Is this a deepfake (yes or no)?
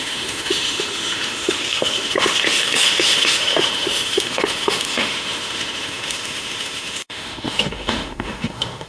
yes